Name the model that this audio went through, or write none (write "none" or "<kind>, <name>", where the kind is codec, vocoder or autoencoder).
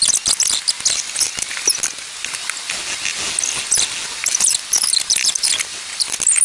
none